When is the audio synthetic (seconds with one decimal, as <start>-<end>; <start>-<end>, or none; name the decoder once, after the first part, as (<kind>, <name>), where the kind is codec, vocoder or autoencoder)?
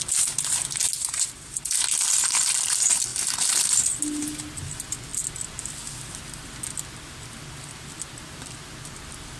none